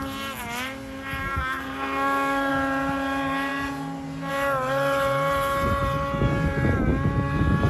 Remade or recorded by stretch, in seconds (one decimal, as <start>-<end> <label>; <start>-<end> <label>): 0.0-1.2 recorded; 1.2-2.5 remade; 2.5-7.7 recorded

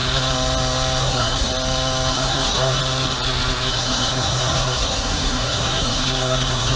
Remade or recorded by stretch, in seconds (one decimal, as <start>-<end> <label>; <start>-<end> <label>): 0.0-1.0 recorded; 1.0-1.5 remade; 1.5-2.1 recorded; 2.1-2.8 remade; 2.8-3.7 recorded; 3.7-6.8 remade